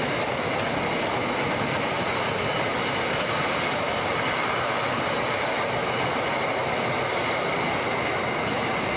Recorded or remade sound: recorded